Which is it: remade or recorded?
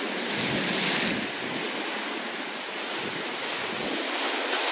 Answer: remade